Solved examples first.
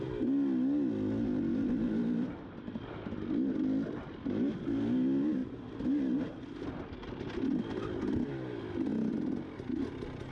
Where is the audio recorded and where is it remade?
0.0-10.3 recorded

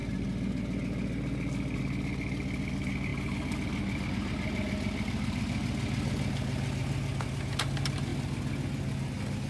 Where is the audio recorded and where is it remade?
0.0-9.5 recorded

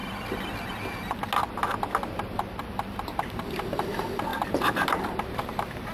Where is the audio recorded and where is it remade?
0.0-2.1 recorded; 2.1-5.9 remade

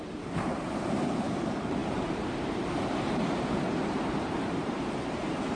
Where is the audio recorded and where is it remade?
0.0-5.6 remade

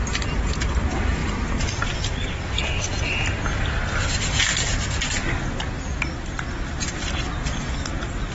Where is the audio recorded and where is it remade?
0.0-1.2 recorded; 1.2-2.4 remade; 2.4-4.5 recorded; 4.5-5.1 remade; 5.1-8.3 recorded

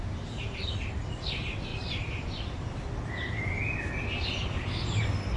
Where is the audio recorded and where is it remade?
0.0-1.7 recorded; 1.7-3.1 remade; 3.1-5.4 recorded